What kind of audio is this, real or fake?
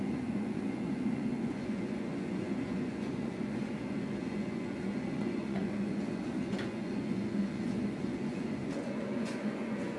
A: fake